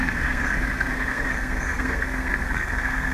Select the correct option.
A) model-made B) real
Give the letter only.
A